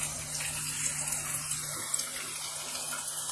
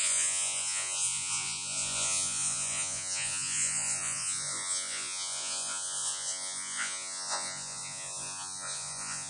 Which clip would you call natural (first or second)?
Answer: first